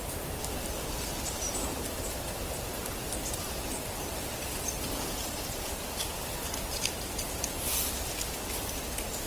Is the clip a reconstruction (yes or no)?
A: no